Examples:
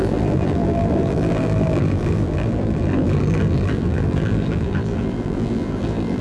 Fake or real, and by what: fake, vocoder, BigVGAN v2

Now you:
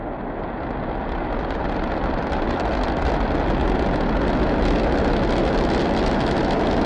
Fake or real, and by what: real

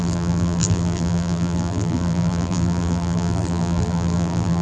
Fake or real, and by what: fake, vocoder, BigVGAN v2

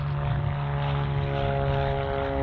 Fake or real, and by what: real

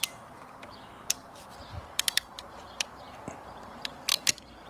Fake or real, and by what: fake, vocoder, BigVGAN v2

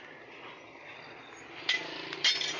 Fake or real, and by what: fake, vocoder, BigVGAN v2